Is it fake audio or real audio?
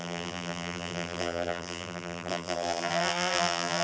fake